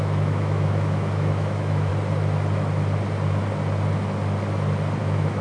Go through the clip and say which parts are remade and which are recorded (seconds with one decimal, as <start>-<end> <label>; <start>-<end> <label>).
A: 0.0-1.9 remade; 1.9-5.0 recorded; 5.0-5.4 remade